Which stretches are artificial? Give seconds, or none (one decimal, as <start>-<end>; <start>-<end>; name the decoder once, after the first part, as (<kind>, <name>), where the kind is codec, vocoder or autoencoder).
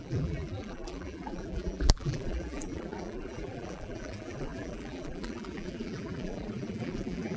0.0-7.4 (vocoder, BigVGAN v2)